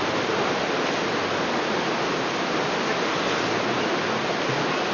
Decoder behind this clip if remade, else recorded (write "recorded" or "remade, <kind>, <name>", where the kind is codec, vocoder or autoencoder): recorded